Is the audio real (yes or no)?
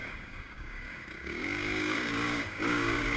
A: no